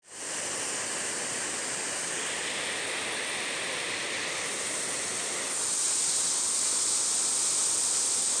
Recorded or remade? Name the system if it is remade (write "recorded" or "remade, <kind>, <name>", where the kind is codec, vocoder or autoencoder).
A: recorded